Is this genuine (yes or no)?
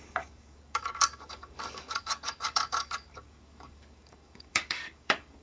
no